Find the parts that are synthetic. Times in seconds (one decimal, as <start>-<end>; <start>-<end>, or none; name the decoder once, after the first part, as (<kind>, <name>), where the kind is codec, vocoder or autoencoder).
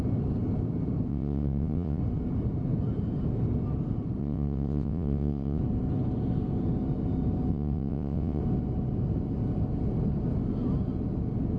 1.1-2.0 (vocoder, WaveNeXt); 4.2-5.6; 7.5-8.4